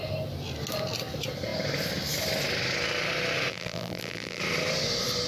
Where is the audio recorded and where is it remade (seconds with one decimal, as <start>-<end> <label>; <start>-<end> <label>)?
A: 0.0-3.5 recorded; 3.5-4.4 remade; 4.4-5.3 recorded